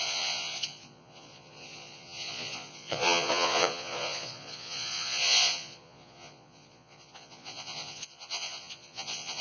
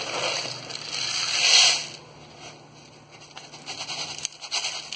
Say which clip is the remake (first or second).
first